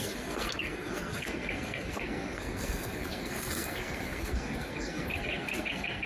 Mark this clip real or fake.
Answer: fake